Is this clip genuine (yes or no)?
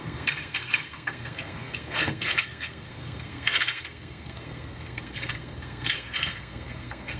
no